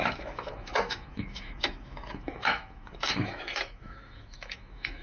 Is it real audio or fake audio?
fake